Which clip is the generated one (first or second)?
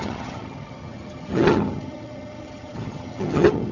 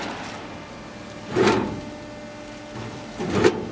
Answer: first